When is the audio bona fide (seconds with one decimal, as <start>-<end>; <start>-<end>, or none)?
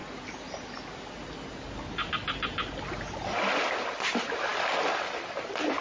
0.0-5.8